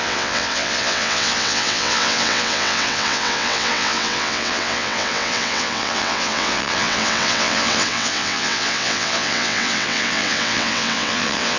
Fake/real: fake